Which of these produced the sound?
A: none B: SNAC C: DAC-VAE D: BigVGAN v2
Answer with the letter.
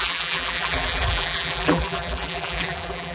D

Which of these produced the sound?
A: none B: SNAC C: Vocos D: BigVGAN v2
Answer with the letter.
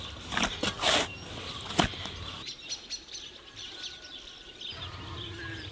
A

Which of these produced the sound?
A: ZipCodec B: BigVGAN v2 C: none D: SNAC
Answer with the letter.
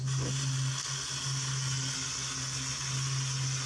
C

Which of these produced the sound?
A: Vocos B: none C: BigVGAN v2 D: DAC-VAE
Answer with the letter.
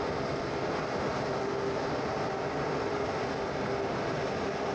B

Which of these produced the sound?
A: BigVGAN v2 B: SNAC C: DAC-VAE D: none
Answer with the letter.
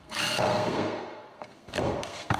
B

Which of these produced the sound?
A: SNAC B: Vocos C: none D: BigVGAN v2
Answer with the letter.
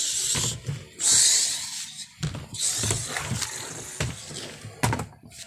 C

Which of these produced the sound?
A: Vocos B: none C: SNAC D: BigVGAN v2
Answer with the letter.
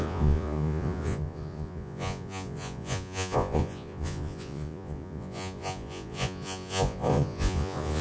A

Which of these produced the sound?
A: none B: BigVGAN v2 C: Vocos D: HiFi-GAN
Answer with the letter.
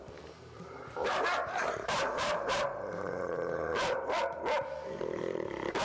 B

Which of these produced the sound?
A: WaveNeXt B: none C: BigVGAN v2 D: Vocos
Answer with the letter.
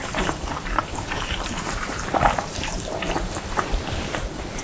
C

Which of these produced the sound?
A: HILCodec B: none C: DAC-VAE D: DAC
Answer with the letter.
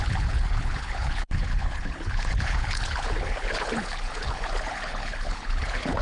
A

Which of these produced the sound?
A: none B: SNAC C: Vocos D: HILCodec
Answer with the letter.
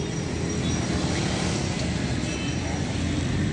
A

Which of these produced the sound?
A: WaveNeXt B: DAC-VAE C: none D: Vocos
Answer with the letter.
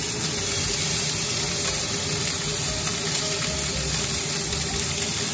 C